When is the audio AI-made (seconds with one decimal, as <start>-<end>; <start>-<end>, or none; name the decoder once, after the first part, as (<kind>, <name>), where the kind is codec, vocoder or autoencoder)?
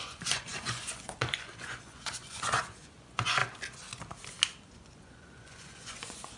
0.0-3.4 (vocoder, Vocos); 4.6-6.4